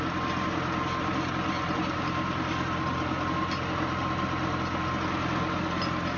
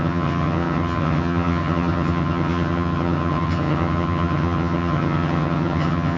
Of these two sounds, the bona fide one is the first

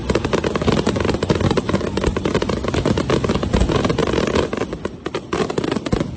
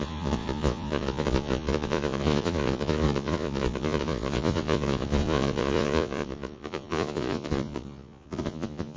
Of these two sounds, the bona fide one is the first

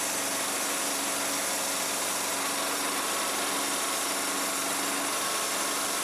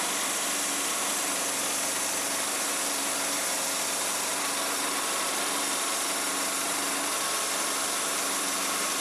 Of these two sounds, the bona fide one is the first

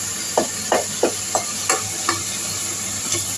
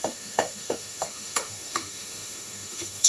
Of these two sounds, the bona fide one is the first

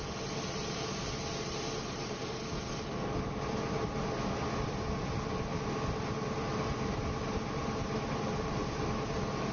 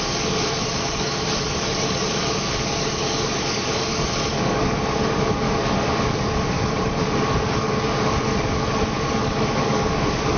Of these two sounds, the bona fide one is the first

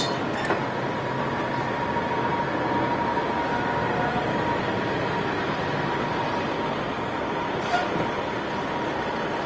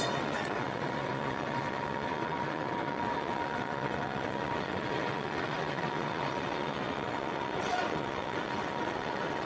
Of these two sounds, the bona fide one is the first